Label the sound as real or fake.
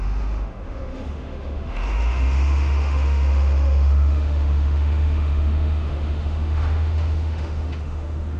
fake